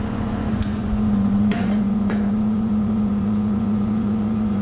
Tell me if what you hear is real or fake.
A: fake